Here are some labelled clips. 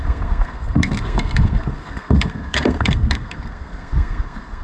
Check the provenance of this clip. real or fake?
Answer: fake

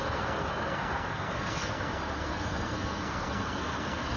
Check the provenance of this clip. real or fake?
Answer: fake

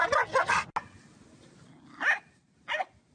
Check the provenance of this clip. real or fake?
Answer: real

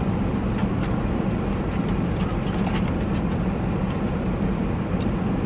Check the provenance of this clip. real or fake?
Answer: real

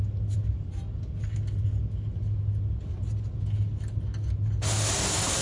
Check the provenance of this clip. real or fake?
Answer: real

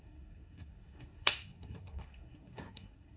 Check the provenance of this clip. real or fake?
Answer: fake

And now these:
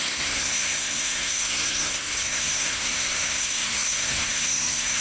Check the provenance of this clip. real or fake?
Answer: fake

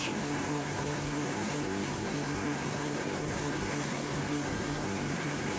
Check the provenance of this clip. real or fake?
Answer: fake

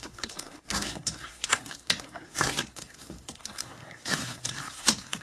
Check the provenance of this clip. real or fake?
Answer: fake